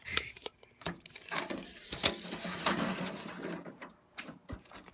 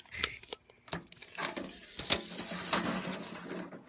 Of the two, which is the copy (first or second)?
first